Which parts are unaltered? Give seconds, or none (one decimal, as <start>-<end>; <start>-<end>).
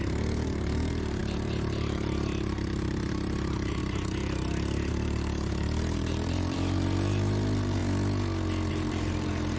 3.8-4.9; 7.8-8.7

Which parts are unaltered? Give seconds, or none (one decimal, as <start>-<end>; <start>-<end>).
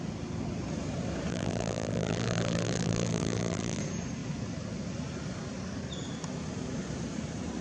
0.0-1.3; 3.8-7.6